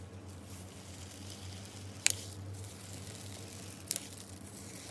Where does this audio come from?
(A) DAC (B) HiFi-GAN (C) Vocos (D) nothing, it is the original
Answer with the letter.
D